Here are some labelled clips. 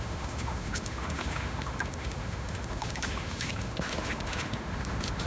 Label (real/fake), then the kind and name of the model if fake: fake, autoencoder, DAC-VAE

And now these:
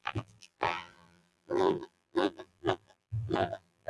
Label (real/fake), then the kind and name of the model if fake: fake, vocoder, BigVGAN v2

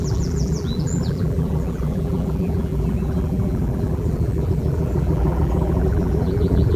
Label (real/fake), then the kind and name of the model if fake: fake, vocoder, BigVGAN v2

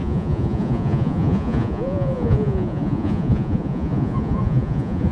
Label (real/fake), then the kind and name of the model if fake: fake, vocoder, Vocos